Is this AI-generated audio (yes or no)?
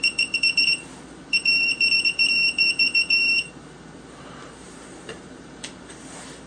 yes